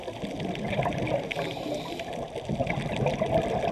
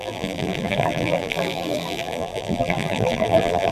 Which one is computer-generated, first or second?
second